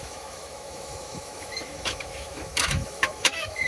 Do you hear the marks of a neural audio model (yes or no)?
yes